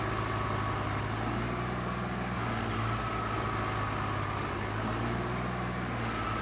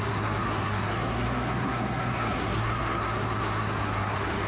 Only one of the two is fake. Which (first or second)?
second